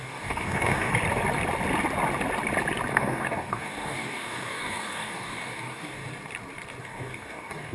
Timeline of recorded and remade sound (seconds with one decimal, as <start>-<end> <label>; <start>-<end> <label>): 0.0-0.9 remade; 0.9-2.9 recorded; 2.9-6.0 remade; 6.0-6.8 recorded; 6.8-7.7 remade